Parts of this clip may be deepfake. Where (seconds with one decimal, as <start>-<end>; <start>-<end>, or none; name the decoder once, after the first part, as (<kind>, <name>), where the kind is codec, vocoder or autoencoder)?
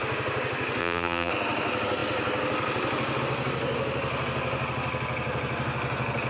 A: 0.8-1.3 (vocoder, BigVGAN v2)